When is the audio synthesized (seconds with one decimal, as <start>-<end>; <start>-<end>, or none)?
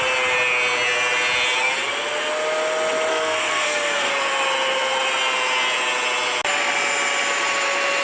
3.1-4.1